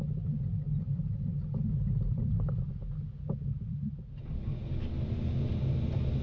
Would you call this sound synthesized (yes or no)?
no